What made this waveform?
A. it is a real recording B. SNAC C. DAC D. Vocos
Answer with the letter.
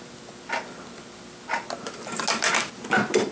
A